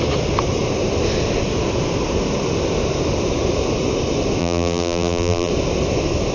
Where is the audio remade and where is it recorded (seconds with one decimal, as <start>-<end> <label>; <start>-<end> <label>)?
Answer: 0.0-4.4 recorded; 4.4-5.5 remade; 5.5-6.3 recorded